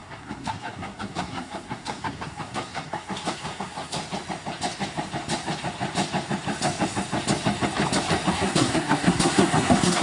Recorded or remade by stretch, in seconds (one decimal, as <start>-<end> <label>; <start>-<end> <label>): 0.0-4.0 remade; 4.0-8.3 recorded; 8.3-10.0 remade